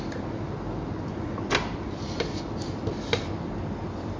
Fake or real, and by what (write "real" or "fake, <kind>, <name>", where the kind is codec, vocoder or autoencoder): real